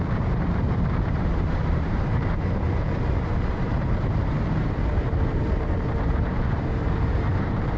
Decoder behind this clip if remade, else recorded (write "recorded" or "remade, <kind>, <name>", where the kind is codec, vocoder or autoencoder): remade, vocoder, BigVGAN v2